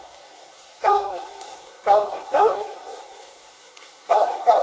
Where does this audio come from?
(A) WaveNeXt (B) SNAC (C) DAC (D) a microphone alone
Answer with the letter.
B